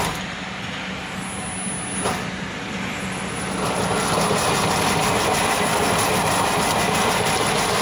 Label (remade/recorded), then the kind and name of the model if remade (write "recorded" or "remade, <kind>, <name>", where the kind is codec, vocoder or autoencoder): recorded